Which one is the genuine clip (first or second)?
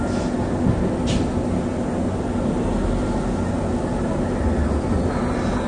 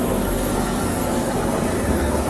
first